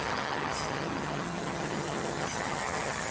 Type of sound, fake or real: fake